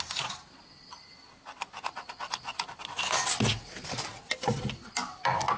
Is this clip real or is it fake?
real